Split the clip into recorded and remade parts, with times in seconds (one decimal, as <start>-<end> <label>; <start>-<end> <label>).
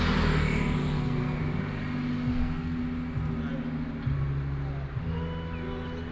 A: 0.0-0.8 recorded; 0.8-1.4 remade; 1.4-2.3 recorded; 2.3-2.8 remade; 2.8-6.1 recorded